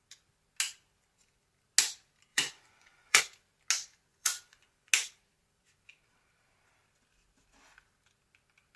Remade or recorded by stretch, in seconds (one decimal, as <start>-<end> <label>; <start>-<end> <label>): 0.0-2.3 recorded; 2.3-3.2 remade; 3.2-4.1 recorded; 4.1-4.9 remade; 4.9-8.8 recorded